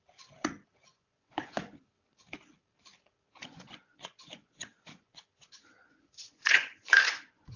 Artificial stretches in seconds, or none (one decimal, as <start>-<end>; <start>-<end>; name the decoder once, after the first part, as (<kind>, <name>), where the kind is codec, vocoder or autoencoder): 0.9-1.8 (vocoder, Vocos); 3.4-7.6